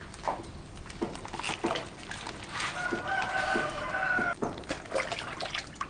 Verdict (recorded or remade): recorded